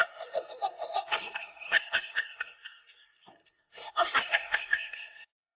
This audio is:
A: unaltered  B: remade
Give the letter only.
B